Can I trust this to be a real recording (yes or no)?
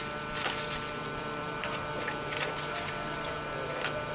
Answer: no